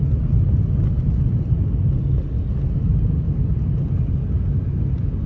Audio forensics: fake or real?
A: real